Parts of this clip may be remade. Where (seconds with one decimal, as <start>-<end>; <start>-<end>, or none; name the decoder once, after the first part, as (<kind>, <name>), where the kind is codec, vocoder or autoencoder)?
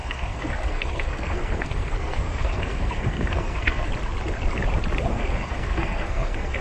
0.0-3.9 (codec, SNAC); 5.1-6.6